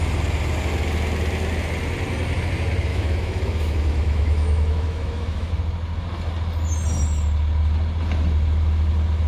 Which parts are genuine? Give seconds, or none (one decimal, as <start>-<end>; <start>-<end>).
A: 0.0-2.9; 5.5-9.3